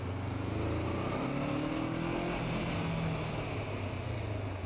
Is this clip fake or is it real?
real